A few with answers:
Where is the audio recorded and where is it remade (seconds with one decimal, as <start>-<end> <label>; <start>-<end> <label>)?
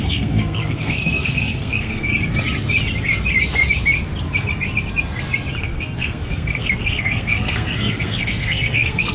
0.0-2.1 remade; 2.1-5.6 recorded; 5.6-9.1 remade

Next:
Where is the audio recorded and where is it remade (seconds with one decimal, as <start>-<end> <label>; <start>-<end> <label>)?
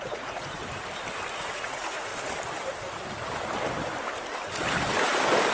0.0-0.6 remade; 0.6-1.3 recorded; 1.3-2.1 remade; 2.1-5.5 recorded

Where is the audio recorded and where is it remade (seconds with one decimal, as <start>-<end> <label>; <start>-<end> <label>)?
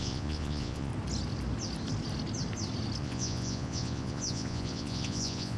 0.0-0.9 remade; 0.9-3.0 recorded; 3.0-5.6 remade